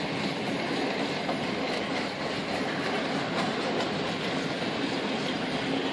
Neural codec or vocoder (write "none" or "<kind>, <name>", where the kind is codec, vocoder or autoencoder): none